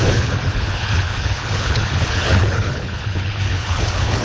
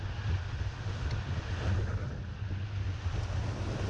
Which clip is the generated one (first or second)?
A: first